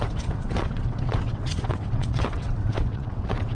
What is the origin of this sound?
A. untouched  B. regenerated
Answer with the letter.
B